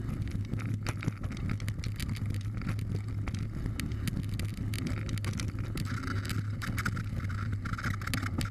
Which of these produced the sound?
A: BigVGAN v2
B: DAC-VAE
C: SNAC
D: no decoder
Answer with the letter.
D